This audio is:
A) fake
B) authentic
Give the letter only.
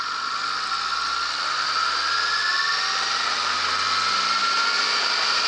B